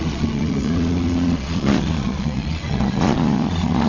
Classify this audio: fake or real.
fake